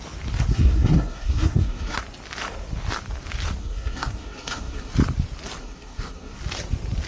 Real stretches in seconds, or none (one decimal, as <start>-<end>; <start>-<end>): 0.0-0.5; 2.0-3.6; 4.9-5.6; 6.4-7.1